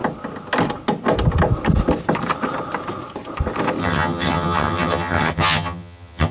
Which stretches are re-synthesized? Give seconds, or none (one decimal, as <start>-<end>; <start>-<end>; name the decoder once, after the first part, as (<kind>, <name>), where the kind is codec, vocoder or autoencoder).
3.8-6.3 (vocoder, HiFi-GAN)